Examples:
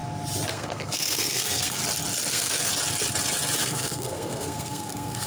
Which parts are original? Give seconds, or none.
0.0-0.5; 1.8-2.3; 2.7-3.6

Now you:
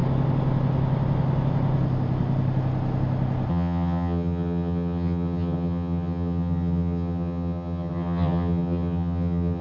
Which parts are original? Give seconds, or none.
0.0-3.5

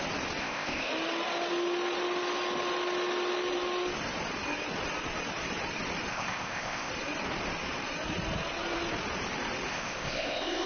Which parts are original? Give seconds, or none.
0.0-0.4; 0.9-6.1; 6.9-9.7

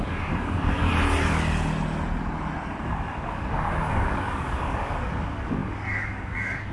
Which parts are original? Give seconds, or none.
0.9-2.8

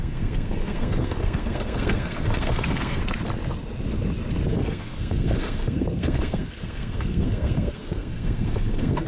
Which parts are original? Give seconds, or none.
3.0-4.5

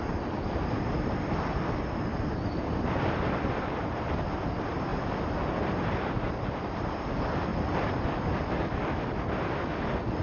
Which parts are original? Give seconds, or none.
0.0-4.9; 6.3-7.5; 8.4-10.2

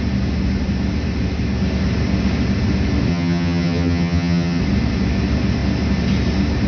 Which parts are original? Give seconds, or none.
0.0-3.1; 4.6-6.7